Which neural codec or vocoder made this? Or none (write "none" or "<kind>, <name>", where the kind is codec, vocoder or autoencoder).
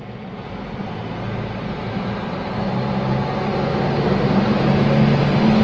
none